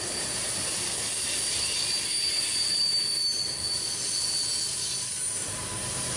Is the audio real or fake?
real